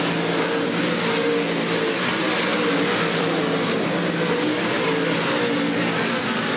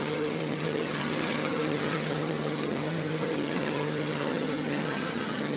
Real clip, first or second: first